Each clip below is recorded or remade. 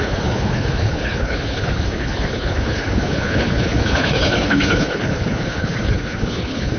remade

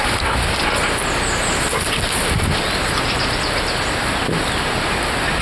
recorded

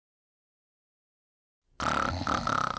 recorded